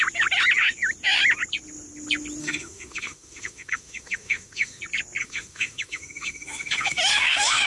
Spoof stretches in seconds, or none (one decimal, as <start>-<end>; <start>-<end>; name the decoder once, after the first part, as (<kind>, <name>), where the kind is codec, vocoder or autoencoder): 2.4-4.8 (autoencoder, DAC-VAE); 5.2-7.7